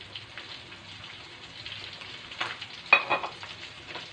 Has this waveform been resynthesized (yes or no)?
no